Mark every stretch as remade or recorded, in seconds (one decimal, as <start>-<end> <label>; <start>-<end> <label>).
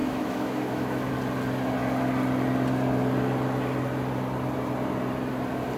0.0-1.1 remade; 1.1-5.8 recorded